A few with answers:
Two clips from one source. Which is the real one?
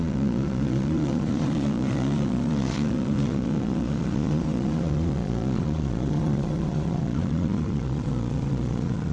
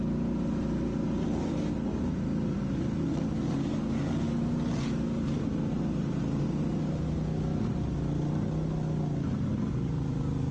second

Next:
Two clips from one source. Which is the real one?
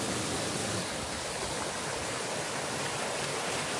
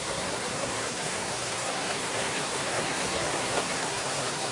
first